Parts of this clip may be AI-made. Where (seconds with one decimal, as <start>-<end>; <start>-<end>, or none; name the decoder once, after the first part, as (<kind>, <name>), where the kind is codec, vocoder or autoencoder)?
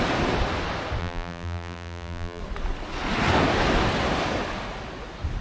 1.0-2.4 (vocoder, BigVGAN v2)